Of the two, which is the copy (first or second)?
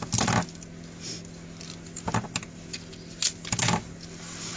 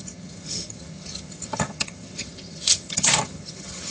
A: second